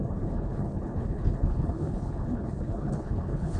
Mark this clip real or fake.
fake